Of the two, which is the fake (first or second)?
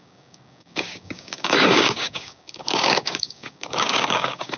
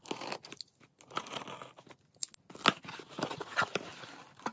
first